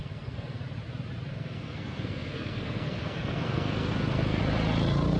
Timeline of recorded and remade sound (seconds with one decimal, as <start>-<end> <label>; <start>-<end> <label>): 0.0-0.6 remade; 0.6-1.3 recorded; 1.3-4.4 remade; 4.4-5.2 recorded